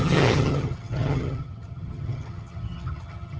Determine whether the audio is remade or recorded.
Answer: remade